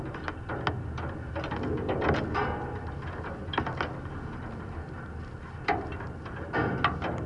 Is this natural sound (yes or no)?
yes